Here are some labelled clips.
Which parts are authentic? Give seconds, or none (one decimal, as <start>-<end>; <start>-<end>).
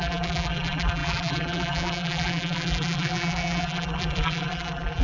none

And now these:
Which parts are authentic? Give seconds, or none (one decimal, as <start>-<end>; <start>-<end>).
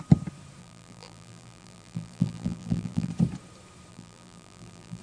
0.0-0.6; 3.1-3.9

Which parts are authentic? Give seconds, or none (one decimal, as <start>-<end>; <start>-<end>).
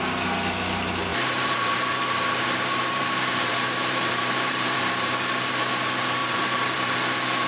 0.0-1.1; 5.6-6.2; 6.9-7.5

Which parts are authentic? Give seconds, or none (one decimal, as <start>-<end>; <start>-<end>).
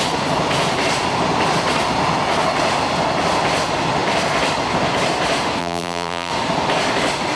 0.0-5.6; 6.3-7.4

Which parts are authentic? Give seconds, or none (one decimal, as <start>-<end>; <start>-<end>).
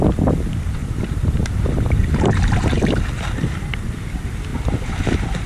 0.0-0.8; 2.8-4.5